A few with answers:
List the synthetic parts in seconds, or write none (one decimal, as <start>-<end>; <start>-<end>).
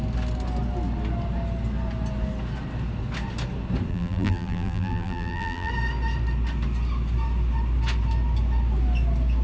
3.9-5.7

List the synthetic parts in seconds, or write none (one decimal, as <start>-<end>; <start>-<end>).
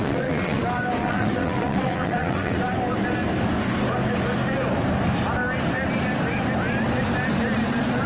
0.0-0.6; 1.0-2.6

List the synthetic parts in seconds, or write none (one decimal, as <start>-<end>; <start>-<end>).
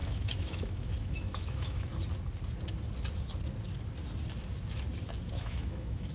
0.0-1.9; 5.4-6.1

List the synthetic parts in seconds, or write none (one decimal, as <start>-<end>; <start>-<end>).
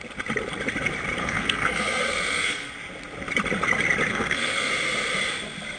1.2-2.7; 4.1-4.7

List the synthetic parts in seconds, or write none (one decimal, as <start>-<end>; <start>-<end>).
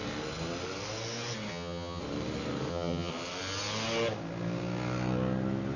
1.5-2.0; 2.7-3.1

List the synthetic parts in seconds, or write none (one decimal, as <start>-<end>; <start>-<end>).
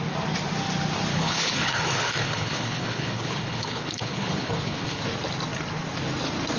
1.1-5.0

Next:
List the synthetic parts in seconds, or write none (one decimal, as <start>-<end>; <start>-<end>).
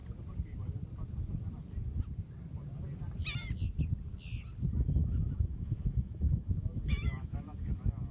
4.7-8.1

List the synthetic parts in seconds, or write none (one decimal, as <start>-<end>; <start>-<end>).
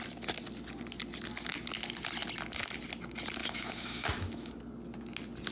3.4-4.5